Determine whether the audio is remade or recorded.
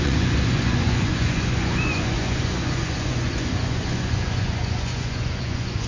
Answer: remade